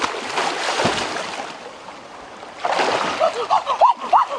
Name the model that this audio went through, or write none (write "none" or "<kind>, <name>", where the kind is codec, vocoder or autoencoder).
none